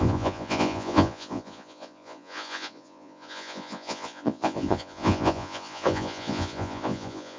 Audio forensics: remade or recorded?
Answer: remade